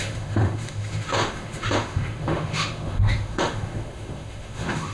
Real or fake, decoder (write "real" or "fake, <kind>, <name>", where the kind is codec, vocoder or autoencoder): fake, autoencoder, DAC-VAE